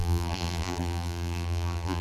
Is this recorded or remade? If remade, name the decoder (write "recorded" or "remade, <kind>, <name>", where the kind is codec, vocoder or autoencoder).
remade, vocoder, BigVGAN v2